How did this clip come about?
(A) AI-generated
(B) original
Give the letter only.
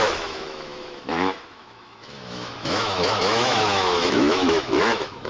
A